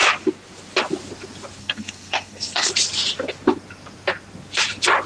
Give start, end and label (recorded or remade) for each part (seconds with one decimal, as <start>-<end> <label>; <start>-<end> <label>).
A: 0.0-1.6 recorded; 1.6-2.7 remade; 2.7-5.1 recorded